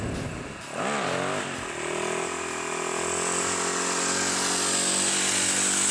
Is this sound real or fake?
real